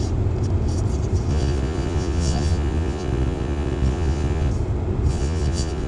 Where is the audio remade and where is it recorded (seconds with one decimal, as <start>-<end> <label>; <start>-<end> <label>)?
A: 0.0-1.3 recorded; 1.3-4.5 remade; 4.5-5.1 recorded; 5.1-5.9 remade

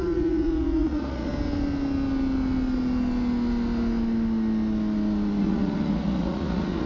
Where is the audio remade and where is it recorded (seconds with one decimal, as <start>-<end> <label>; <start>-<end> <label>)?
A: 0.0-1.3 remade; 1.3-5.4 recorded; 5.4-6.9 remade

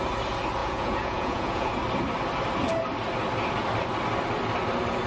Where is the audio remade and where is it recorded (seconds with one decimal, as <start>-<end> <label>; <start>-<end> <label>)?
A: 0.0-0.6 recorded; 0.6-1.7 remade; 1.7-5.1 recorded